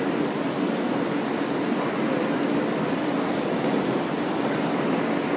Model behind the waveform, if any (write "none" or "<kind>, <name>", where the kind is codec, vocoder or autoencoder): none